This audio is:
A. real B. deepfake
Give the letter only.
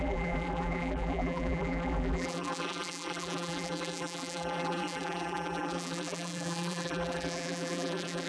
B